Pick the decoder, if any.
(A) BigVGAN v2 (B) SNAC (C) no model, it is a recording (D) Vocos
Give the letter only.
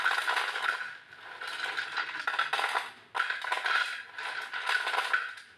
C